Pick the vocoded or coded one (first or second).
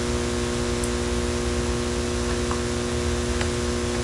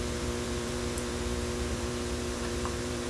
second